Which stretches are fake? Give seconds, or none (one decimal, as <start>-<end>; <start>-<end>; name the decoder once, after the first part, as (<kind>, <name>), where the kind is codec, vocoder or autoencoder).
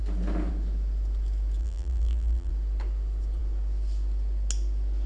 1.6-2.5 (vocoder, BigVGAN v2)